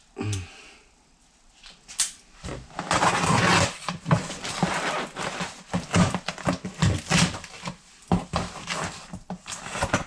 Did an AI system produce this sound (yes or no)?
no